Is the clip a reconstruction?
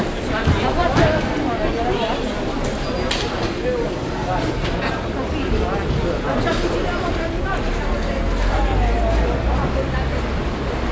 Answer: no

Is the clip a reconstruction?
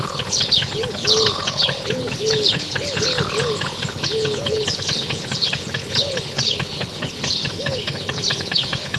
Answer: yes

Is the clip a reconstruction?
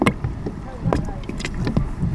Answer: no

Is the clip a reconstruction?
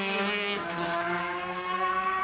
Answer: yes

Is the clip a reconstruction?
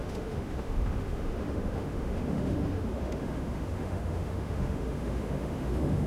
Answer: yes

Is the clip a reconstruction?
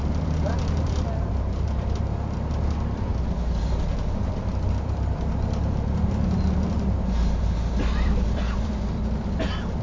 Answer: yes